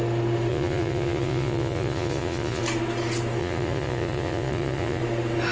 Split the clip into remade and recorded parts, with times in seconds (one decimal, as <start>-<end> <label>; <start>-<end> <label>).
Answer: 0.0-0.5 recorded; 0.5-2.6 remade; 2.6-3.4 recorded; 3.4-5.0 remade; 5.0-5.5 recorded